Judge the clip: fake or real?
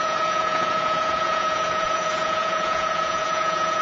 fake